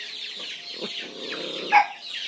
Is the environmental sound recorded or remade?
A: recorded